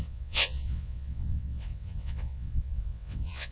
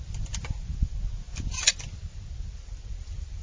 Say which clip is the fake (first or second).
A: first